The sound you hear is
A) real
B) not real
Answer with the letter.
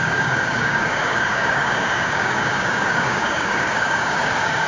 B